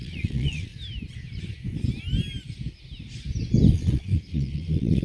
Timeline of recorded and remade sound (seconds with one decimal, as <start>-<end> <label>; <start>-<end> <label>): 0.0-0.7 remade; 0.7-3.7 recorded; 3.7-5.0 remade